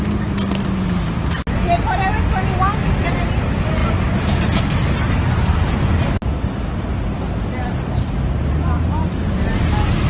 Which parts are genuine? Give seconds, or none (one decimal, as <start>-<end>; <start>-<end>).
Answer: 0.0-10.1